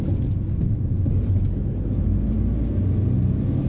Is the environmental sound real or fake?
real